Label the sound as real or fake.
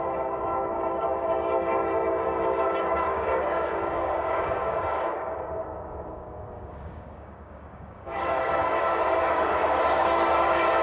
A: fake